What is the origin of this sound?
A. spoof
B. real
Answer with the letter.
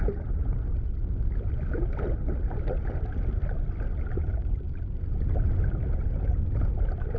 B